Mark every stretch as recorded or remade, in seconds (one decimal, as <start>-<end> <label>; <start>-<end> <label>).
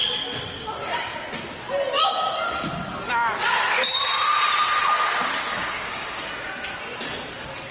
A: 0.0-5.5 recorded; 5.5-6.3 remade; 6.3-7.7 recorded